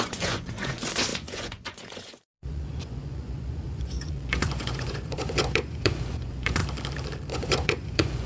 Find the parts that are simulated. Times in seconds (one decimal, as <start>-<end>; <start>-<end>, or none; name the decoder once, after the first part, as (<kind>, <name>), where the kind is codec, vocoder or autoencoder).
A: 0.0-6.6 (vocoder, Vocos); 7.3-8.3